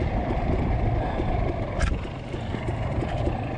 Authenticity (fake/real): fake